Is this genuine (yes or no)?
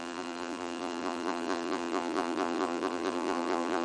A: no